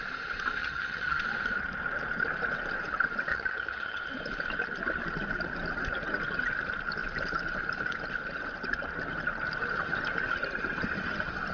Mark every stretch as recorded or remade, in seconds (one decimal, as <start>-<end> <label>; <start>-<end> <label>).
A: 0.0-0.6 recorded; 0.6-1.2 remade; 1.2-3.3 recorded; 3.3-4.0 remade; 4.0-11.5 recorded